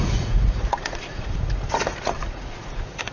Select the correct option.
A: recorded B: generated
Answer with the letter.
B